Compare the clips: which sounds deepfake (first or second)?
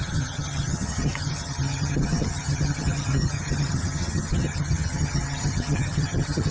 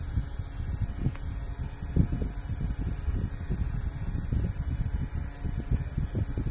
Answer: first